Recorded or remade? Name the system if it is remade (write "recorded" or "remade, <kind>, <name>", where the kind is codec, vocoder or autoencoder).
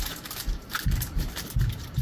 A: remade, vocoder, BigVGAN v2